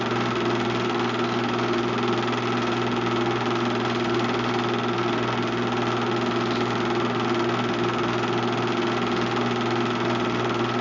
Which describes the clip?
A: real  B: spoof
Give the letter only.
A